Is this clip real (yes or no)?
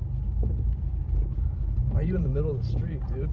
no